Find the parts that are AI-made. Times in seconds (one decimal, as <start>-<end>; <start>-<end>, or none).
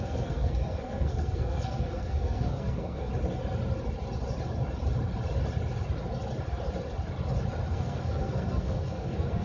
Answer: 0.0-3.1; 7.7-9.4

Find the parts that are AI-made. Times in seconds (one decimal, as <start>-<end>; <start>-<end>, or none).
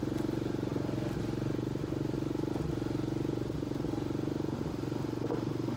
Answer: none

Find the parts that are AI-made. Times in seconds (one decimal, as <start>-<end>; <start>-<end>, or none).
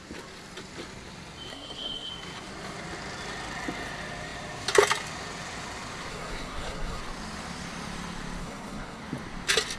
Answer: 1.5-2.1; 6.1-7.0; 8.4-9.0